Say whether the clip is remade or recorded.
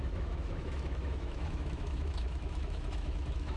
remade